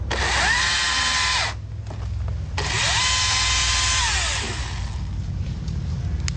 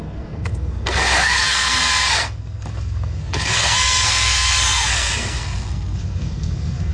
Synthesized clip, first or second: second